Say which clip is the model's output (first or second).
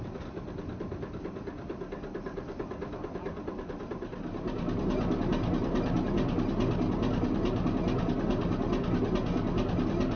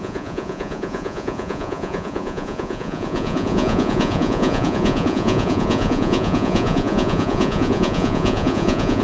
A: second